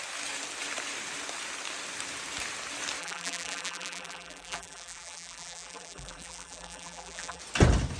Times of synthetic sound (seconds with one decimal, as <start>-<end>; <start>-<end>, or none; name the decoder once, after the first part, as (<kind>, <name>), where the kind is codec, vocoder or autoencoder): 3.0-7.4 (vocoder, BigVGAN v2)